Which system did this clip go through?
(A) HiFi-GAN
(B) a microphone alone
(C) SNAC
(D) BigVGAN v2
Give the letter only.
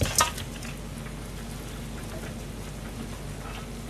B